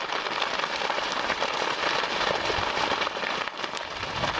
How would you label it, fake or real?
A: real